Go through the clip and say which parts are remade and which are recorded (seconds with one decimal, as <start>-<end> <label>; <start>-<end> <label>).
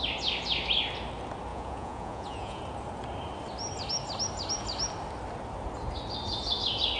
0.0-1.5 recorded; 1.5-2.6 remade; 2.6-7.0 recorded